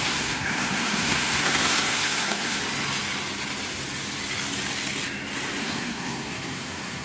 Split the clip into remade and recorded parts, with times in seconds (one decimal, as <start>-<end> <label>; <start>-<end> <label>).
0.0-2.6 remade; 2.6-5.6 recorded; 5.6-7.0 remade